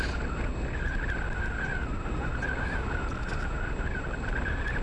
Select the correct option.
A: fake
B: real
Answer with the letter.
B